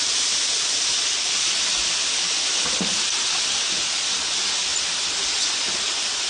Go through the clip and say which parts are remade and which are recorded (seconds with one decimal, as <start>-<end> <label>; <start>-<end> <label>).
0.0-6.3 recorded